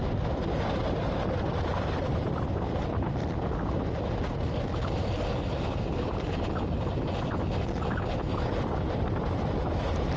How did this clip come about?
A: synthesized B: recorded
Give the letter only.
B